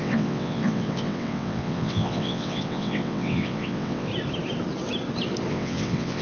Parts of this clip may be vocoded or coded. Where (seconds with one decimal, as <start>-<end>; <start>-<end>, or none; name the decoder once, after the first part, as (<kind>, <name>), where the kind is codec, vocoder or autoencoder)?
0.0-4.1 (vocoder, WaveNeXt); 5.5-6.2